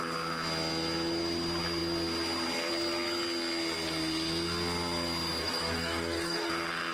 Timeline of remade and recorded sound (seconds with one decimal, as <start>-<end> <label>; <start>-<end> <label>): 0.0-5.4 recorded; 5.4-6.5 remade; 6.5-6.9 recorded